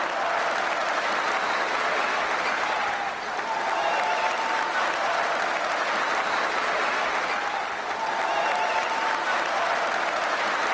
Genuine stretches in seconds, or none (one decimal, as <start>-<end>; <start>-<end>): 0.0-10.7